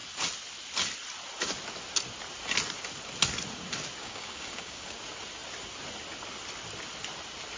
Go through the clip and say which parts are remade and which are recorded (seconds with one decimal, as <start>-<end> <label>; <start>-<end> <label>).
0.0-4.0 recorded; 4.0-5.0 remade; 5.0-7.6 recorded